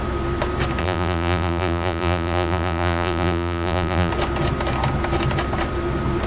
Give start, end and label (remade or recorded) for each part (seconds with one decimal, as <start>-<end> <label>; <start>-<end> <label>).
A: 0.0-0.8 recorded; 0.8-4.1 remade; 4.1-6.3 recorded